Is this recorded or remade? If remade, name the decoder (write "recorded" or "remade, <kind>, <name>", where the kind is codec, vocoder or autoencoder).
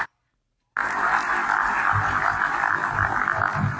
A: recorded